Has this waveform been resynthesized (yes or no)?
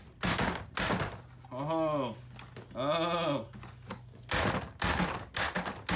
no